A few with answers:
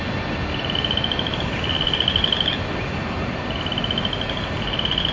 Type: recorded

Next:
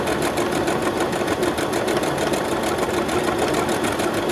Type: recorded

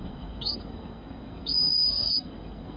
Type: remade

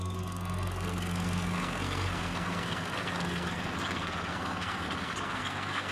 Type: remade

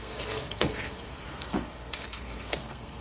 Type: remade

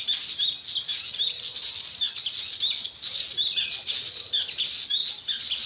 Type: recorded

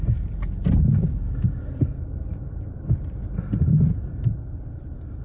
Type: recorded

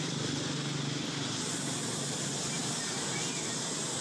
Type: recorded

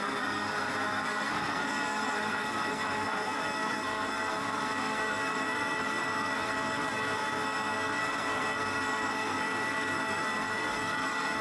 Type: remade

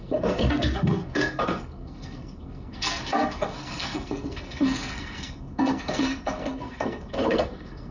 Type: remade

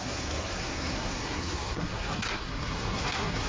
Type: remade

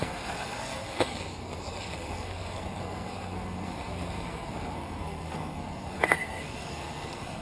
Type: remade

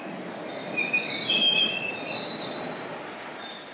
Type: recorded